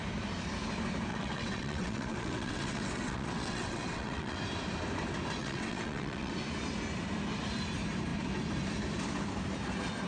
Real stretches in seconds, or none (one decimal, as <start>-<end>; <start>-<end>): 0.0-1.1; 4.4-5.4; 6.3-10.1